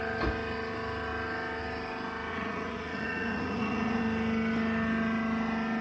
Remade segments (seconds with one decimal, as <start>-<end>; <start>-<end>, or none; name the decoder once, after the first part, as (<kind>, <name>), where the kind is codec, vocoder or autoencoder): 2.3-4.0 (vocoder, Vocos)